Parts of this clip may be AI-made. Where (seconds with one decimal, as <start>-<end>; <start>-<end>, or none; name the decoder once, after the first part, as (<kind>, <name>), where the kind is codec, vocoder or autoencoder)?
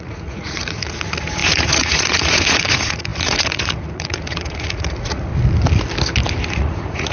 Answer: 0.0-5.3 (vocoder, Vocos); 6.5-7.1